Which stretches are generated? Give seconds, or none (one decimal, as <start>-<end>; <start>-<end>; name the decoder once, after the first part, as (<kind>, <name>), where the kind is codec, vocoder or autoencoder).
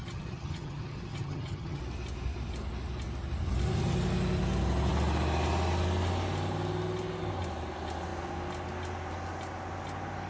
0.0-1.8 (vocoder, HiFi-GAN)